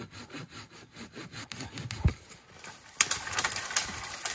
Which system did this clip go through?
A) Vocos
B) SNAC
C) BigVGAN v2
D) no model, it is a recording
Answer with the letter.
D